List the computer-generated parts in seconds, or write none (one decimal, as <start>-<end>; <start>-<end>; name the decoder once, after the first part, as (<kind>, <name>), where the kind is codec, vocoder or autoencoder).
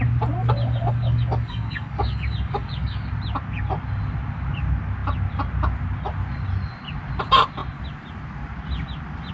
0.4-3.1 (codec, DAC)